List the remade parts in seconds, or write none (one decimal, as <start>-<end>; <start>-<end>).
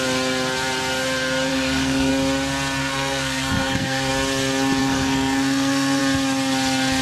1.5-2.1; 2.8-4.1; 4.8-6.0